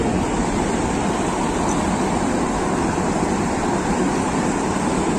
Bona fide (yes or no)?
yes